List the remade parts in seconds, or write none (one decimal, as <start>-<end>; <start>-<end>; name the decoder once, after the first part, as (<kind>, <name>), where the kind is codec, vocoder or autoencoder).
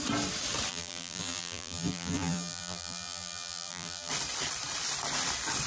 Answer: 0.7-4.1 (vocoder, BigVGAN v2)